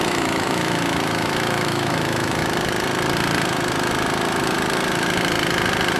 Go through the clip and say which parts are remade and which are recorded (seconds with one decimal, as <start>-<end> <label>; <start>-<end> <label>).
0.0-2.4 remade; 2.4-6.0 recorded